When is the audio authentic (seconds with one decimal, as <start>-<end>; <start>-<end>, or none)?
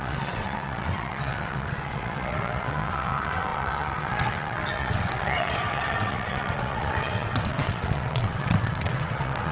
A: none